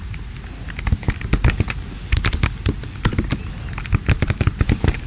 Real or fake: real